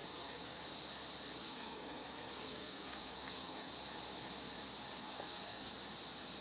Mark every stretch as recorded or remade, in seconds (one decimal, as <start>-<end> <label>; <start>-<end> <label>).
0.0-0.6 remade; 0.6-1.4 recorded; 1.4-3.7 remade; 3.7-5.0 recorded; 5.0-5.7 remade; 5.7-6.4 recorded